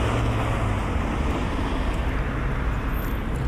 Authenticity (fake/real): real